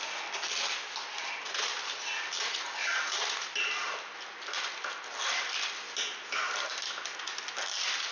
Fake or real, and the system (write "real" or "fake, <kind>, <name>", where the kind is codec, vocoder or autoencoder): real